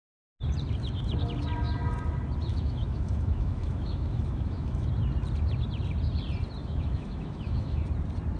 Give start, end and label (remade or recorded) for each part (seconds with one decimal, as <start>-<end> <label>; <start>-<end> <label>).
0.0-2.5 recorded; 2.5-4.9 remade; 4.9-6.6 recorded; 6.6-7.8 remade; 7.8-8.4 recorded